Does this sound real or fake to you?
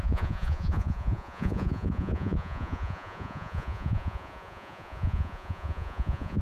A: fake